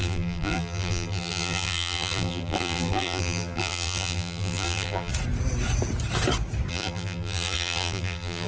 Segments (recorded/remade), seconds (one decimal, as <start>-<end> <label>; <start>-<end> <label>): 0.0-5.1 remade; 5.1-6.7 recorded; 6.7-8.5 remade

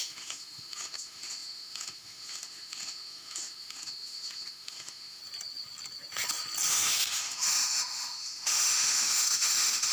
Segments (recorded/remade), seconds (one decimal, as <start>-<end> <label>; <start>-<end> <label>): 0.0-5.2 remade; 5.2-6.7 recorded; 6.7-9.9 remade

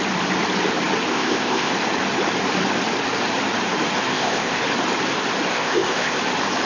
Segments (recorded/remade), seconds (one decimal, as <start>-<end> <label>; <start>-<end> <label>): 0.0-1.1 recorded; 1.1-1.7 remade; 1.7-4.1 recorded; 4.1-4.6 remade; 4.6-5.5 recorded; 5.5-6.2 remade; 6.2-6.7 recorded

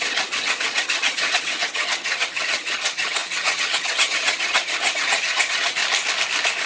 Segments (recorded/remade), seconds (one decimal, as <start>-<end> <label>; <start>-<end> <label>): 0.0-5.8 remade; 5.8-6.7 recorded

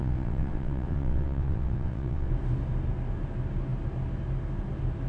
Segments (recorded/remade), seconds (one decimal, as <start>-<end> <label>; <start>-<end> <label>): 0.0-2.3 remade; 2.3-5.1 recorded

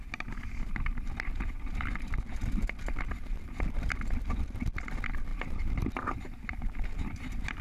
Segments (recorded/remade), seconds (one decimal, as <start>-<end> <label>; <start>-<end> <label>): 0.0-7.6 recorded

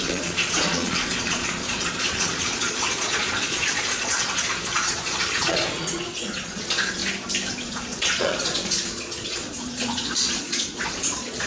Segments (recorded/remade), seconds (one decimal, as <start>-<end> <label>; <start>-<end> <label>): 0.0-7.0 remade; 7.0-7.6 recorded; 7.6-11.5 remade